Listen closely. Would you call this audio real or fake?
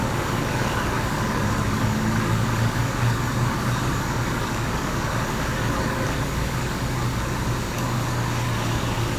fake